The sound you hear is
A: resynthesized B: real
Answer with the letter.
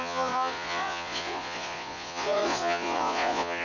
A